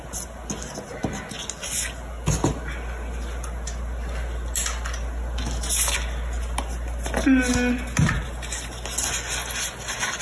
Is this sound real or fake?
real